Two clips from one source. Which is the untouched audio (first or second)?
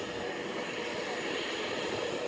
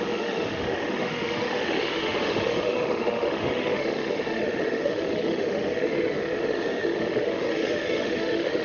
first